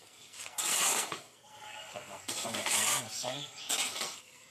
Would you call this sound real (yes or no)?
no